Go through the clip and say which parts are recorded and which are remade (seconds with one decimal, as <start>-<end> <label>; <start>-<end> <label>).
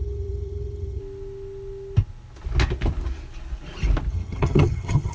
0.0-1.0 remade; 1.0-4.1 recorded; 4.1-5.1 remade